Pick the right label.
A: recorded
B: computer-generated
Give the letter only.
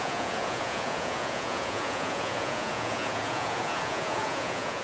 B